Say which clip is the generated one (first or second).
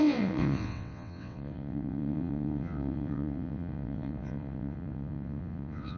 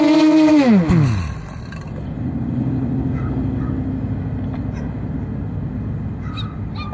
first